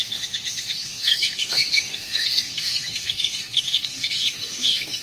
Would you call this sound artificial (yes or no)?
yes